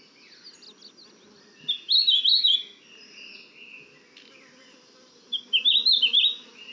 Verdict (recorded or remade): recorded